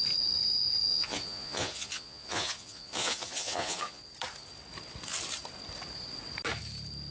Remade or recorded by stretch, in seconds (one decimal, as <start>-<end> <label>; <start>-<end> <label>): 0.0-0.9 recorded; 0.9-4.0 remade; 4.0-7.1 recorded